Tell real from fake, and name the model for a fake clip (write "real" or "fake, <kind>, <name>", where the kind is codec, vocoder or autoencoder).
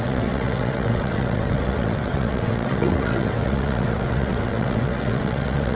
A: fake, vocoder, WaveNeXt